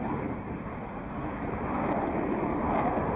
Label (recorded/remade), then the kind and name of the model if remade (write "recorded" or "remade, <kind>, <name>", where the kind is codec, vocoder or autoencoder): recorded